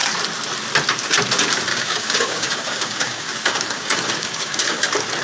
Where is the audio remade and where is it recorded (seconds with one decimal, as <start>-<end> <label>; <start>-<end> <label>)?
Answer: 0.0-1.7 recorded; 1.7-4.8 remade; 4.8-5.2 recorded